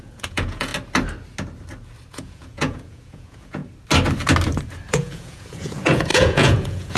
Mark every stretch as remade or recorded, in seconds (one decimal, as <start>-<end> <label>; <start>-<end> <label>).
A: 0.0-0.7 remade; 0.7-2.1 recorded; 2.1-3.6 remade; 3.6-4.9 recorded; 4.9-7.0 remade